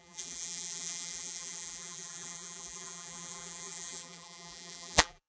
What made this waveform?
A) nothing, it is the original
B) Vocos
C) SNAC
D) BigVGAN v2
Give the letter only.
D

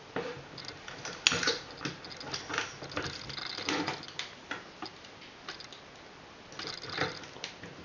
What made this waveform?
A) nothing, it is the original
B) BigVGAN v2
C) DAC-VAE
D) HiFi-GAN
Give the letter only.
A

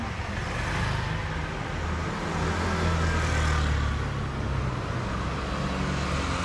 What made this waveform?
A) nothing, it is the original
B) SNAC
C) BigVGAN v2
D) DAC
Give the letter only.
A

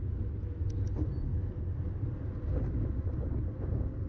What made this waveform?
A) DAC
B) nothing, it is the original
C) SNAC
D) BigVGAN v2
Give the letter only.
B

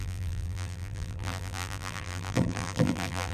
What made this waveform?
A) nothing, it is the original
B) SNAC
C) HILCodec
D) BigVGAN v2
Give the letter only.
D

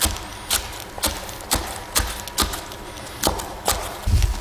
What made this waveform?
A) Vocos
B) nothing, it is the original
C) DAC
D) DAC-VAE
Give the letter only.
B